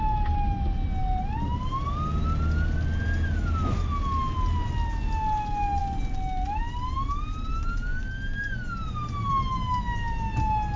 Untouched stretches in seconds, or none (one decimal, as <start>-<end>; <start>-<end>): 0.0-10.8